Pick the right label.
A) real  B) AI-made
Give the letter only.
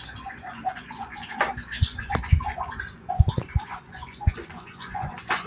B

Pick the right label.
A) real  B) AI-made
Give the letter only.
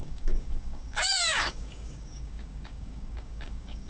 B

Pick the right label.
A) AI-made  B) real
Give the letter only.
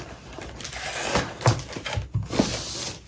B